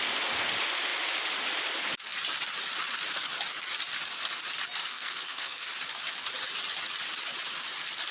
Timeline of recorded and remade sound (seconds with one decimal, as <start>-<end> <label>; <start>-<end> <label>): 0.0-4.8 recorded; 4.8-5.7 remade; 5.7-8.1 recorded